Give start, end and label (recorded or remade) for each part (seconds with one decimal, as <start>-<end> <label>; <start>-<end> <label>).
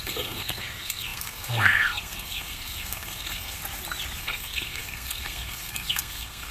0.0-3.6 remade; 3.6-4.2 recorded; 4.2-6.5 remade